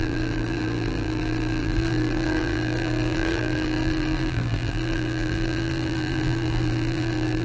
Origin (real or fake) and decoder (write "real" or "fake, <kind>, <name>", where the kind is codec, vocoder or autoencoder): fake, vocoder, BigVGAN v2